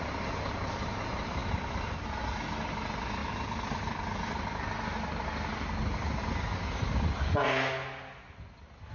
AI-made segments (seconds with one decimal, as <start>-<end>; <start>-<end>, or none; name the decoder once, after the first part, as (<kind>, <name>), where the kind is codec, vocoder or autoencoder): 1.4-2.2 (vocoder, BigVGAN v2)